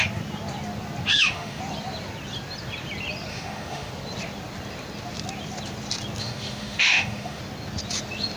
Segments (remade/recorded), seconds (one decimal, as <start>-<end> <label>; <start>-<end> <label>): 0.0-1.1 recorded; 1.1-1.6 remade; 1.6-3.3 recorded; 3.3-3.9 remade; 3.9-6.2 recorded; 6.2-7.4 remade; 7.4-8.4 recorded